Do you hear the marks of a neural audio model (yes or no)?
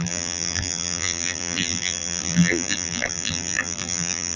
yes